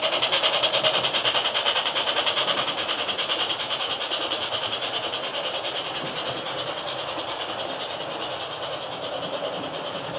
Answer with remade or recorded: remade